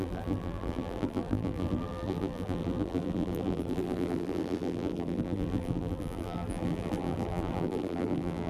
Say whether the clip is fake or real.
fake